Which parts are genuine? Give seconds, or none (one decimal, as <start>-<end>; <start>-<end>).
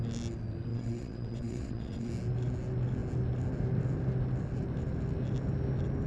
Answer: 0.0-0.7; 2.1-6.1